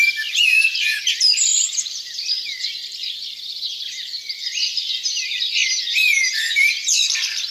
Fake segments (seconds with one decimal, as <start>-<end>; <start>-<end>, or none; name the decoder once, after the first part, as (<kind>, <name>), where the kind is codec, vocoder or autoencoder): 0.0-5.6 (vocoder, BigVGAN v2); 6.3-7.5